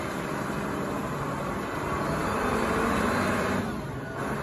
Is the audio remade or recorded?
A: recorded